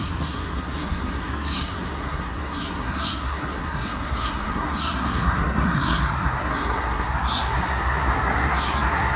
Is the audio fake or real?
fake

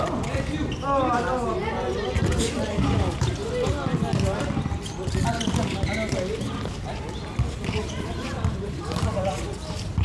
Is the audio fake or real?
real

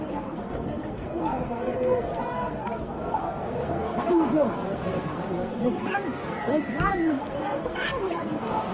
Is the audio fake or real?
fake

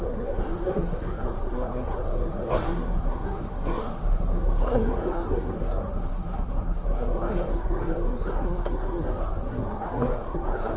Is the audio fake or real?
fake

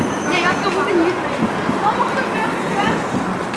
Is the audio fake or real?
real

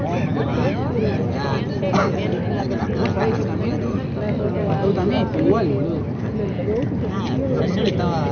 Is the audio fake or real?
real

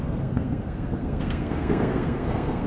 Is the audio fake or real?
fake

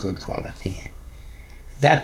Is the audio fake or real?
fake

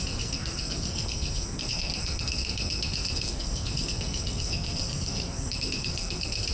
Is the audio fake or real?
fake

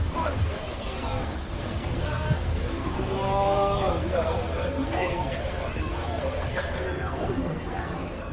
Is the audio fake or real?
fake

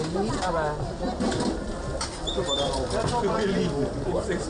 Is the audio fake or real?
real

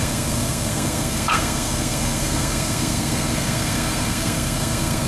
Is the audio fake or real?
fake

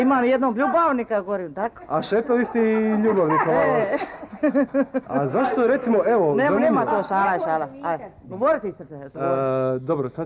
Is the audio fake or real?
real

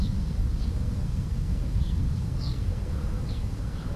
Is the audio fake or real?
fake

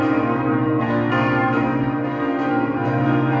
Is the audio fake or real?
fake